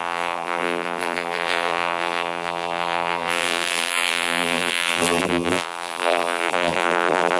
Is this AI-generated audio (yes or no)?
yes